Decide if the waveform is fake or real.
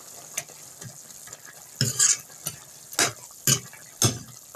real